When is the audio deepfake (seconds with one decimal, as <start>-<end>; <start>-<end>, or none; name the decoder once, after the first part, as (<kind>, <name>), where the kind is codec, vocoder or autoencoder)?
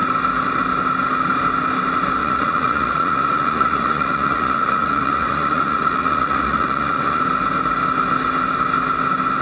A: 2.2-7.2 (vocoder, Vocos)